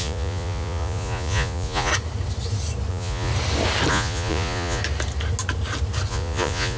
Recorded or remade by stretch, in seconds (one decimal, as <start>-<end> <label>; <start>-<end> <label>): 0.0-1.9 remade; 1.9-2.9 recorded; 2.9-3.3 remade; 3.3-3.9 recorded; 3.9-4.8 remade; 4.8-6.1 recorded; 6.1-6.8 remade